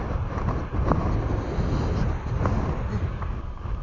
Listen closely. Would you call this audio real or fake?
real